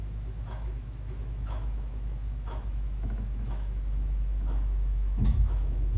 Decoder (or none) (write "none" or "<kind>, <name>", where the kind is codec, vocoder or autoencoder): autoencoder, DAC-VAE